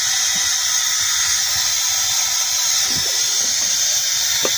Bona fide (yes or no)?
yes